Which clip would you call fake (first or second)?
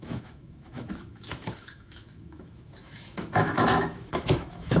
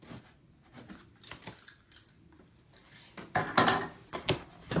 first